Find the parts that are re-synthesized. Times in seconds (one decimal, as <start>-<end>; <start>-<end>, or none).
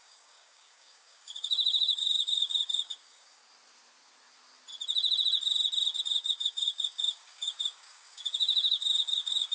0.0-3.4; 6.0-9.5